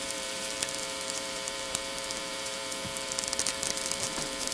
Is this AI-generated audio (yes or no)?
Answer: yes